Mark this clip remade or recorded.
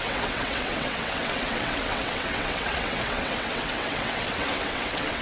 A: remade